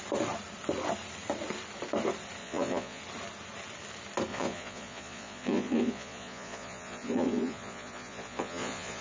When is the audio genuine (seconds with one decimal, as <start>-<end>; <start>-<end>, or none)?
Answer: 0.0-2.4; 3.0-4.3